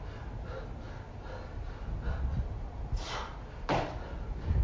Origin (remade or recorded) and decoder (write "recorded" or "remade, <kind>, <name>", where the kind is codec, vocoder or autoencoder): recorded